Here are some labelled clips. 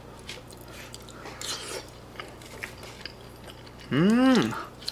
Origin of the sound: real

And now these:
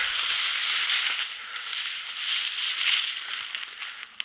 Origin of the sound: real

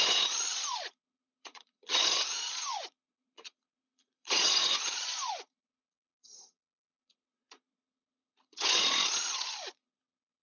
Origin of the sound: fake